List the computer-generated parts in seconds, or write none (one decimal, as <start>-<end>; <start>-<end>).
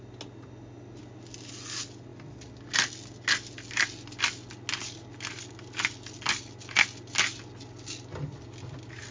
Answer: none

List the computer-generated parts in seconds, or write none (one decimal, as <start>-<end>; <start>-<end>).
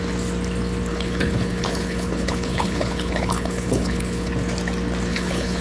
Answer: 0.9-4.3; 5.1-5.6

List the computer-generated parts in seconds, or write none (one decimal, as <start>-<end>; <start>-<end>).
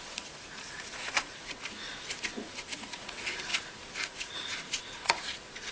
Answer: 0.0-5.7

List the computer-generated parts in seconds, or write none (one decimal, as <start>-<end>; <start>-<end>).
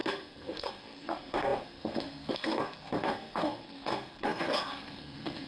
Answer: 0.0-5.5